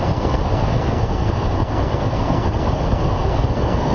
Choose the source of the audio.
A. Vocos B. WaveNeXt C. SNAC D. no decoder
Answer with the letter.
C